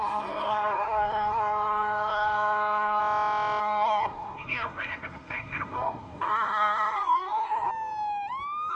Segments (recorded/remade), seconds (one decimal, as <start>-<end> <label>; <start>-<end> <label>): 0.0-3.0 remade; 3.0-3.6 recorded; 3.6-7.7 remade; 7.7-8.7 recorded